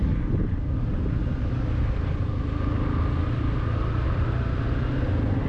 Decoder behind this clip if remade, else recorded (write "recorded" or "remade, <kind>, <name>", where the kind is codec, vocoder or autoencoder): recorded